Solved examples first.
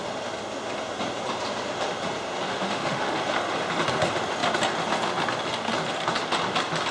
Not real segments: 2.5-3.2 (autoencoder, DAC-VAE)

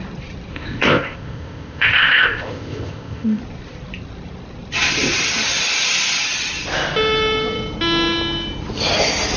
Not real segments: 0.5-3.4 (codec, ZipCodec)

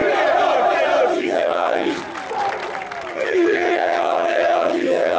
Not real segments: 1.2-2.0 (vocoder, HiFi-GAN); 3.1-5.2